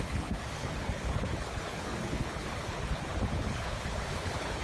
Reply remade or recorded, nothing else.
remade